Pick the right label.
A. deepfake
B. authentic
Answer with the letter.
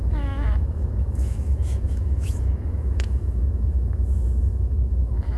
A